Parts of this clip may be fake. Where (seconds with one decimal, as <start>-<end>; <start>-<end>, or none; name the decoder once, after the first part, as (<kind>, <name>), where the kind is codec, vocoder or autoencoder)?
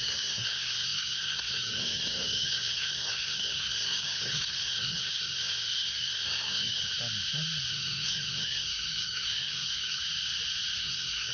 0.0-6.8 (codec, SNAC); 7.7-10.0; 10.8-11.3